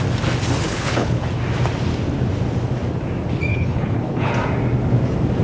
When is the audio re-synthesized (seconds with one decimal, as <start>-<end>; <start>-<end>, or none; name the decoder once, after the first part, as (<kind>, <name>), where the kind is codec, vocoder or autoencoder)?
0.6-1.3 (codec, HILCodec); 3.5-4.3